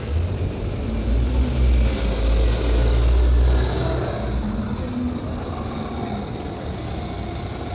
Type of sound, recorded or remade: recorded